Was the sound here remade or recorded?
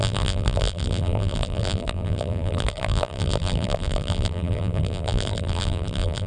remade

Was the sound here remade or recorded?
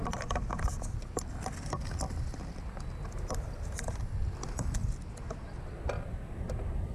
recorded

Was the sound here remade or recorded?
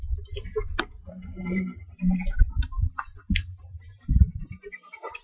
remade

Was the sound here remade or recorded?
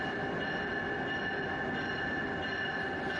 recorded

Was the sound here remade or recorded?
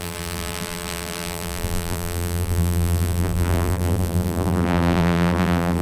remade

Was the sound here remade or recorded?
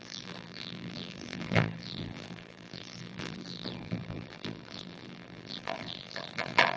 remade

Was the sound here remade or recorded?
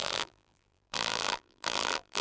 remade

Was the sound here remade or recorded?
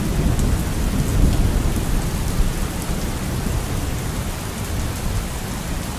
recorded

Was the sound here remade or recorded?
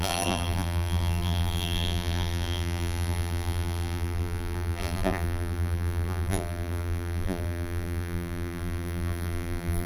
remade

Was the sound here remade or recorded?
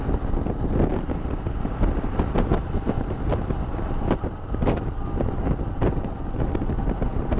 recorded